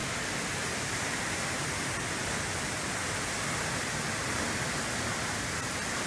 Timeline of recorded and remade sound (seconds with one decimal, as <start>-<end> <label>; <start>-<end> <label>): 0.0-6.1 recorded